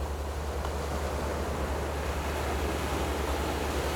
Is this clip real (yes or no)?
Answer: yes